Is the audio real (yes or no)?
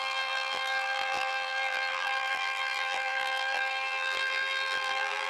no